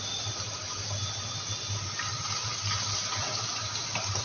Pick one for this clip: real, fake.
real